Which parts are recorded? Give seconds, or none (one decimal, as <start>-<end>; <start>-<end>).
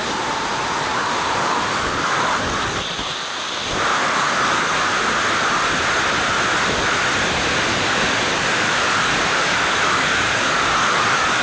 0.0-0.9; 2.8-3.9; 4.9-7.7